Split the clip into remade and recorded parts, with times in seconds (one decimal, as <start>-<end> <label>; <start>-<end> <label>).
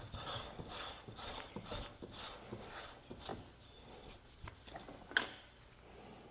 0.0-6.3 recorded